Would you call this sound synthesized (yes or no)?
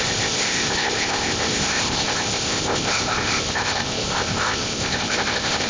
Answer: yes